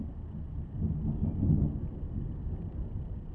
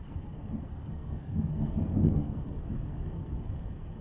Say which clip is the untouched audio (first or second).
first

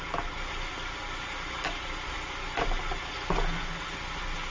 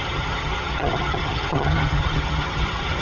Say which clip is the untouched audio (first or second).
first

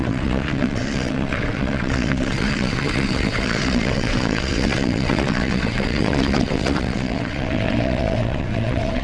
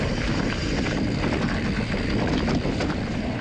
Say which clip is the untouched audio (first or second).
second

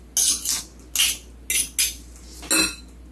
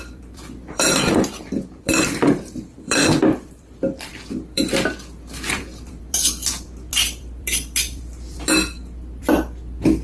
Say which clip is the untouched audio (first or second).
first